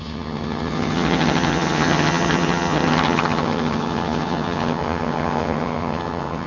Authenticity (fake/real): fake